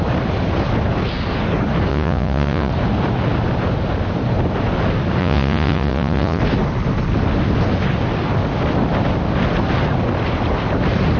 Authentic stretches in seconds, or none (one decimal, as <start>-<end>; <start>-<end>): 0.0-1.9; 2.7-5.2; 6.4-11.2